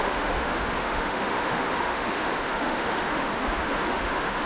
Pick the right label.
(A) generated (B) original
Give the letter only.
A